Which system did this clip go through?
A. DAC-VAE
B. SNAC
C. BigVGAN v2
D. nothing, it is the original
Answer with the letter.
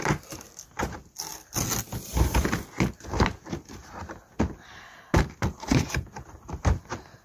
D